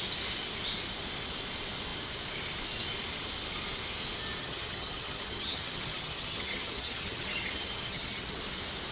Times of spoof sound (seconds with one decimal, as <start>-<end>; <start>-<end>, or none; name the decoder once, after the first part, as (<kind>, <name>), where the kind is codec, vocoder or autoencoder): 4.4-8.4 (vocoder, HiFi-GAN)